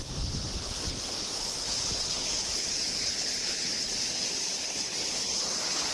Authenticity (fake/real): fake